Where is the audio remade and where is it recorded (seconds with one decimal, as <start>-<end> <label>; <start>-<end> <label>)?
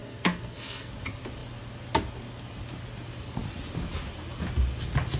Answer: 0.0-0.9 remade; 0.9-5.2 recorded